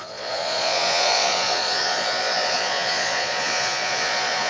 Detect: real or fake fake